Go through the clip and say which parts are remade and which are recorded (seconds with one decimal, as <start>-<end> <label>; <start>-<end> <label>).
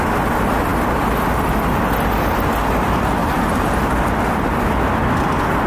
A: 0.0-3.2 recorded; 3.2-4.1 remade; 4.1-5.7 recorded